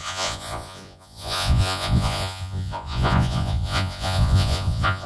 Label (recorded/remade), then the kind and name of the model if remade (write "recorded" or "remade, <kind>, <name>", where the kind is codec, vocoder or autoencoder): remade, vocoder, Vocos